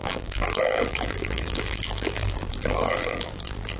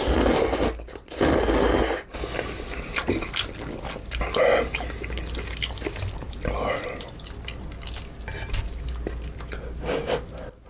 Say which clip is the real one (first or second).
second